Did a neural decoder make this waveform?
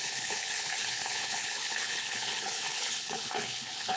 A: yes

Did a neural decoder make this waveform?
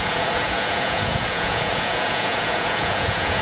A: yes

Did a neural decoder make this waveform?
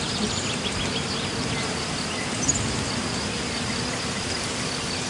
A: no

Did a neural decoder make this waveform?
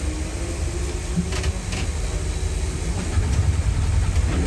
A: no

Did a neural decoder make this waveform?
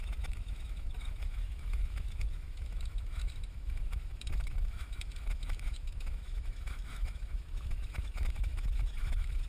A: yes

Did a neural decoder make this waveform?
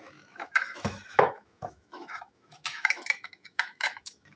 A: yes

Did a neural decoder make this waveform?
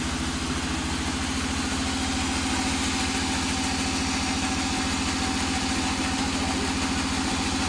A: no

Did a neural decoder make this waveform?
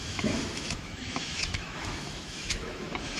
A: yes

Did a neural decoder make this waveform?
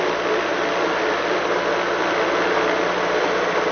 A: no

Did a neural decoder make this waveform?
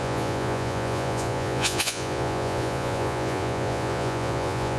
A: yes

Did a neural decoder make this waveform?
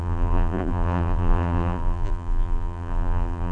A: yes